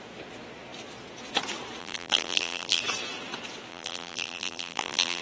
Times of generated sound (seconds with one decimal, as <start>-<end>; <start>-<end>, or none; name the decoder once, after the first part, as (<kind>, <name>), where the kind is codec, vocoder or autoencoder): 1.8-2.8 (vocoder, BigVGAN v2); 3.7-5.2